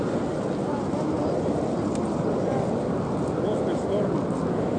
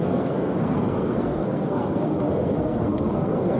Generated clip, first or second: second